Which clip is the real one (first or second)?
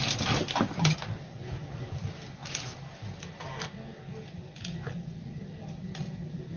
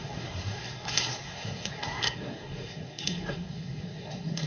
first